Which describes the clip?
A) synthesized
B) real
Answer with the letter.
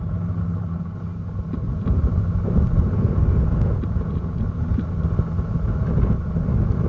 B